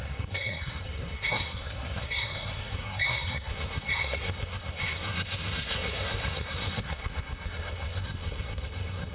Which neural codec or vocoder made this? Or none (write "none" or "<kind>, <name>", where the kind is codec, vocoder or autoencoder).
codec, SNAC